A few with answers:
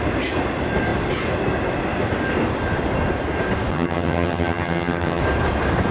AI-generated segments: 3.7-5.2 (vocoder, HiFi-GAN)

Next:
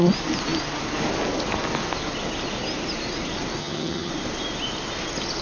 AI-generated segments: 3.6-4.1 (vocoder, HiFi-GAN)

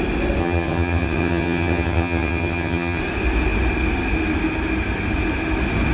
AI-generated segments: 0.4-3.0 (vocoder, HiFi-GAN)

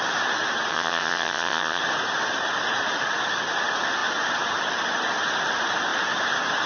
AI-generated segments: 0.7-1.8 (vocoder, HiFi-GAN)

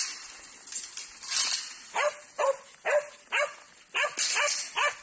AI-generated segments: none

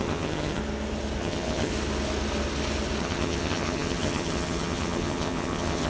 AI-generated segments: 0.0-0.6 (vocoder, HiFi-GAN); 1.2-1.7; 3.0-5.9

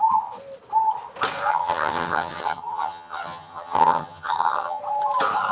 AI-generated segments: 1.5-4.8 (vocoder, HiFi-GAN)

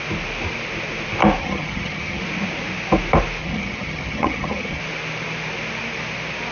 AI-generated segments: 1.4-2.2 (vocoder, HiFi-GAN); 3.4-4.8